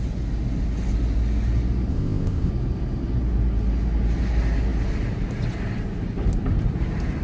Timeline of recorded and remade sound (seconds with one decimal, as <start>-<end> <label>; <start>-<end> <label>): 0.0-1.9 recorded; 1.9-2.5 remade; 2.5-7.2 recorded